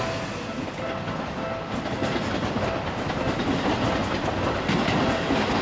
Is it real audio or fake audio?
real